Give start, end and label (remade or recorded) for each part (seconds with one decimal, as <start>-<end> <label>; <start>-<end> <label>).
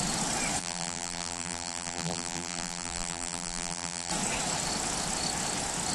0.0-0.6 recorded; 0.6-4.1 remade; 4.1-5.9 recorded